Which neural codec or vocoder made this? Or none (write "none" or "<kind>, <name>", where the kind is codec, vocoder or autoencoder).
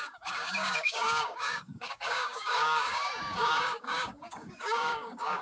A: codec, DAC